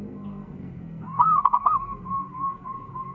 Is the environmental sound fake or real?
fake